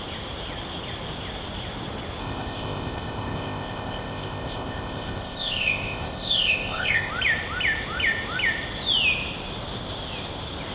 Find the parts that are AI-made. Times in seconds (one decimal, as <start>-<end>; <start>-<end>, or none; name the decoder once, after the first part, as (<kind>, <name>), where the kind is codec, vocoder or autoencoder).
2.2-7.1 (codec, ZipCodec)